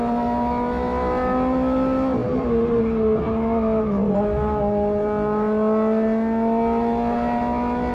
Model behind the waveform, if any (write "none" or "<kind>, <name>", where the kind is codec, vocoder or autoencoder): none